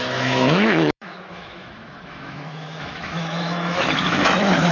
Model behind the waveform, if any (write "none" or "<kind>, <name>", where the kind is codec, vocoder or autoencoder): autoencoder, DAC-VAE